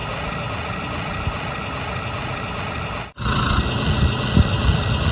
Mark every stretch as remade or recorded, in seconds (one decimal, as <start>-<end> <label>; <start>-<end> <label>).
0.0-5.1 recorded